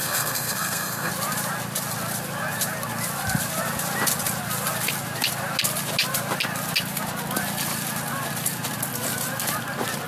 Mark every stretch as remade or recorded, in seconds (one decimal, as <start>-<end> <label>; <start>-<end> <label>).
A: 0.0-1.1 remade; 1.1-10.1 recorded